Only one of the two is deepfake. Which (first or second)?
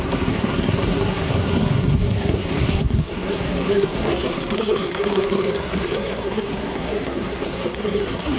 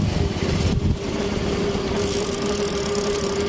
first